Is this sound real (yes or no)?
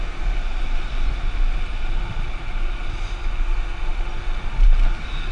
yes